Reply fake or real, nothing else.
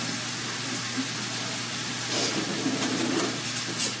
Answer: real